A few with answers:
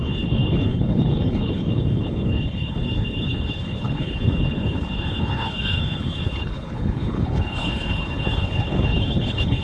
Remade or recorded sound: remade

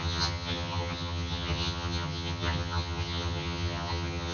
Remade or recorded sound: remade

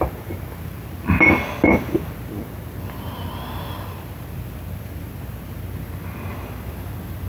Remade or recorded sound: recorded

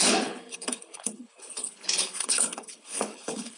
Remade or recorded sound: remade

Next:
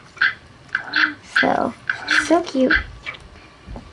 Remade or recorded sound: recorded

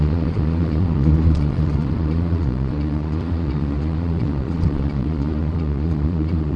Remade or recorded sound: remade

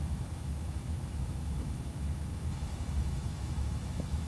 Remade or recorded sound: remade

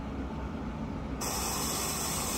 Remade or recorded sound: recorded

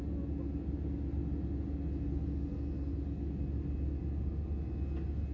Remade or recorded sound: recorded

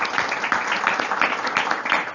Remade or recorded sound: recorded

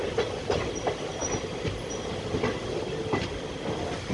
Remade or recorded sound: recorded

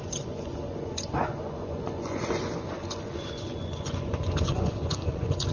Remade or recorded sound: remade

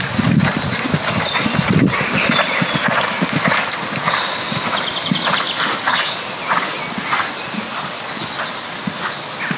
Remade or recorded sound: recorded